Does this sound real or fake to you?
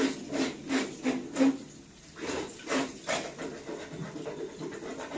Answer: real